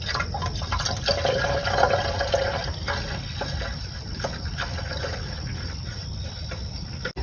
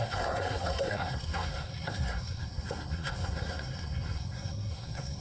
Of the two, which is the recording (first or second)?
first